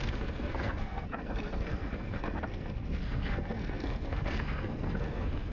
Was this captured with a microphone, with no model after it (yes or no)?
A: no